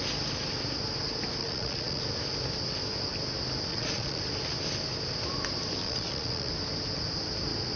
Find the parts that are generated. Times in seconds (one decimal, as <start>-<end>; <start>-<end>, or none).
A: 1.4-2.0; 3.7-4.2; 5.8-6.5